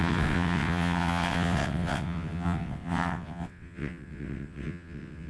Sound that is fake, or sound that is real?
fake